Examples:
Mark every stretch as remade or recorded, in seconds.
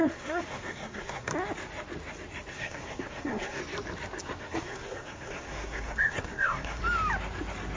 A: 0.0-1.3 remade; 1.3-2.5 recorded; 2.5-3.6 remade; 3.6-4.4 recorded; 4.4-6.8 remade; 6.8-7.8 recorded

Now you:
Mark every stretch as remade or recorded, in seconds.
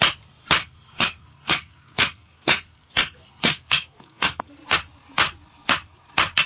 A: 0.0-0.6 recorded; 0.6-4.5 remade; 4.5-6.5 recorded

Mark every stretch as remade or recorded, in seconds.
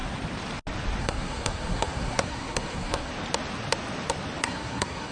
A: 0.0-1.0 recorded; 1.0-3.1 remade; 3.1-4.4 recorded; 4.4-5.1 remade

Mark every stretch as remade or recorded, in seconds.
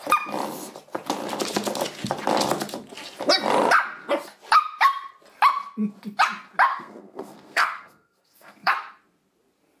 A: 0.0-6.7 recorded; 6.7-8.7 remade; 8.7-9.8 recorded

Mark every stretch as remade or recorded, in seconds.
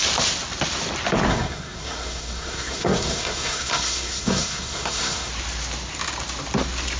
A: 0.0-1.3 recorded; 1.3-5.3 remade; 5.3-7.0 recorded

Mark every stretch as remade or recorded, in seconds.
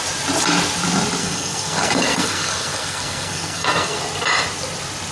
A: 0.0-1.2 recorded; 1.2-4.0 remade; 4.0-5.1 recorded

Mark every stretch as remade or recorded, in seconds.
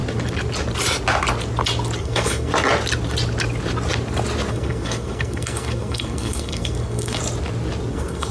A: 0.0-2.0 recorded; 2.0-2.5 remade; 2.5-4.5 recorded; 4.5-7.2 remade; 7.2-7.9 recorded; 7.9-8.3 remade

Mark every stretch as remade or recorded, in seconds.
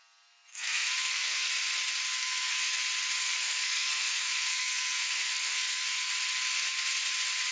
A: 0.0-0.5 recorded; 0.5-1.5 remade; 1.5-2.2 recorded; 2.2-2.8 remade; 2.8-3.2 recorded; 3.2-6.1 remade; 6.1-7.5 recorded